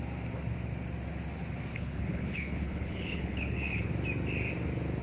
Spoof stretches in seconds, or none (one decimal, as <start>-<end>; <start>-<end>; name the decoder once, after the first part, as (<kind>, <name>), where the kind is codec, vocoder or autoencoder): 1.7-3.9 (codec, HILCodec)